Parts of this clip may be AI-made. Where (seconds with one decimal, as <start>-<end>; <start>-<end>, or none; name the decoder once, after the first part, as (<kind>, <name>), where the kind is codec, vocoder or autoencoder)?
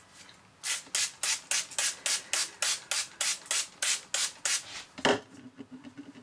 none